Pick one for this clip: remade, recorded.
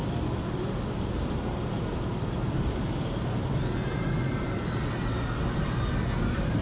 recorded